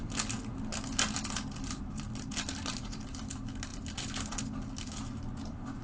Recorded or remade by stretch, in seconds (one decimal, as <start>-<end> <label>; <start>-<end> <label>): 0.0-5.8 recorded